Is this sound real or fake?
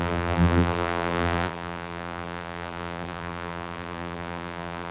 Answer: fake